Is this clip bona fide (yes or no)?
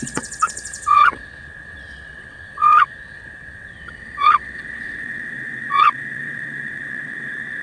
no